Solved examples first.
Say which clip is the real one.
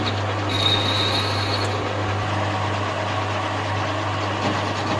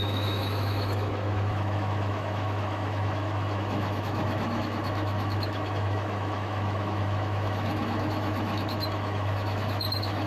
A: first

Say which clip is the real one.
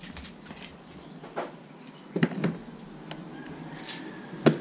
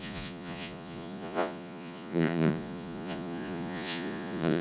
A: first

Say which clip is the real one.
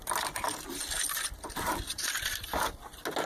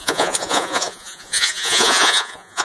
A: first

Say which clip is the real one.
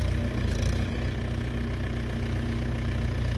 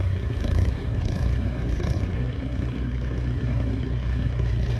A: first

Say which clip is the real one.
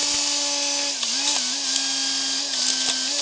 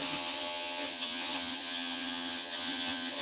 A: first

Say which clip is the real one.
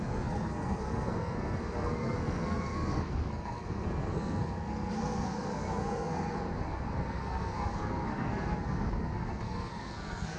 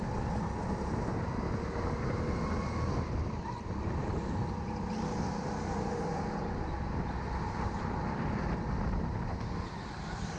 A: second